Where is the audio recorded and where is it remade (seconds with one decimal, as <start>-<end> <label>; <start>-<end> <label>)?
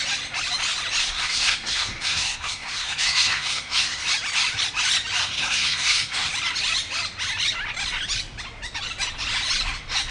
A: 0.0-1.0 recorded; 1.0-4.0 remade; 4.0-5.2 recorded; 5.2-6.3 remade; 6.3-10.1 recorded